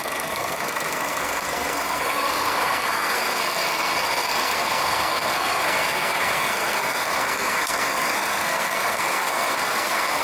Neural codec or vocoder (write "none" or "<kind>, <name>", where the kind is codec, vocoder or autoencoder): codec, SNAC